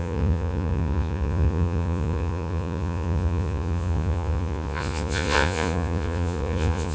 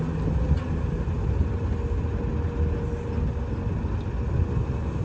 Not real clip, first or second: first